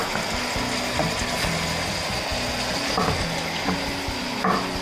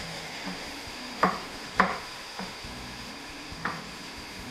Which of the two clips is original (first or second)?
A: first